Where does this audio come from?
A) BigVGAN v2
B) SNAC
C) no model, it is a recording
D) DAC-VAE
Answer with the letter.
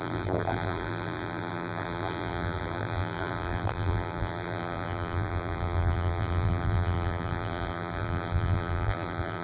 A